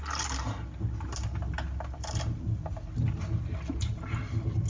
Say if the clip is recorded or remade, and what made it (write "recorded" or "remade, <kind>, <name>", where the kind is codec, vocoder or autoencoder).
recorded